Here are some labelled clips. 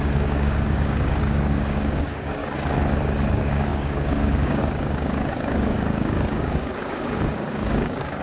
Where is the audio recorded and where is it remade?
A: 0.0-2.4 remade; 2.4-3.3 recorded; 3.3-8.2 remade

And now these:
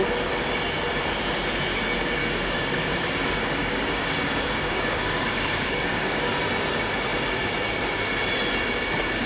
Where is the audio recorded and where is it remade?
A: 0.0-2.2 recorded; 2.2-6.2 remade; 6.2-9.3 recorded

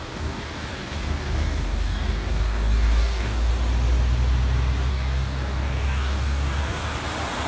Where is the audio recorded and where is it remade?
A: 0.0-3.5 remade; 3.5-4.9 recorded; 4.9-6.8 remade; 6.8-7.5 recorded

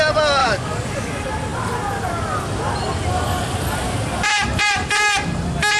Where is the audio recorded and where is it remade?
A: 0.0-0.4 recorded; 0.4-1.1 remade; 1.1-5.8 recorded